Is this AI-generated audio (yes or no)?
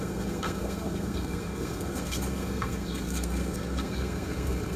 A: yes